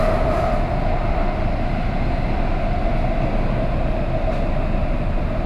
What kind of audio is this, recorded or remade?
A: recorded